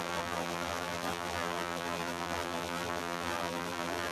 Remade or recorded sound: remade